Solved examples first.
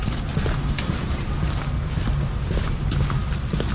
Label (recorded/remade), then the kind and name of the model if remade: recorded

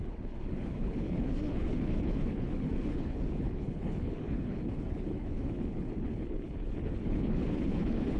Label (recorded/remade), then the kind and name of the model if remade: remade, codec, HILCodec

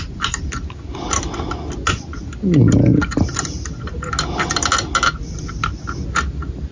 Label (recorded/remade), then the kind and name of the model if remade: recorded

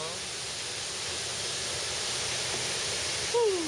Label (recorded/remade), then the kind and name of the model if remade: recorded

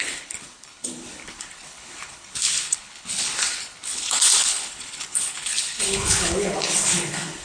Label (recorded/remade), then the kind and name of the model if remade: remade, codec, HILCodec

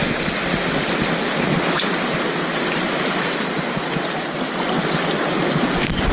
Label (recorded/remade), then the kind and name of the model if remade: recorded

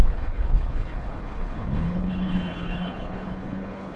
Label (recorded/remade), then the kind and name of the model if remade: remade, codec, HILCodec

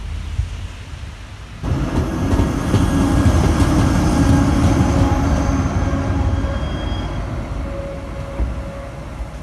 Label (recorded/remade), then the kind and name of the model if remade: recorded